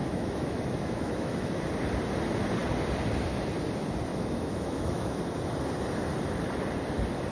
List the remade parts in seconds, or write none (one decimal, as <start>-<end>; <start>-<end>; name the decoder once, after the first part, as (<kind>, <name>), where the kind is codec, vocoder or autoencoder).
0.0-1.6 (autoencoder, DAC-VAE); 4.1-5.2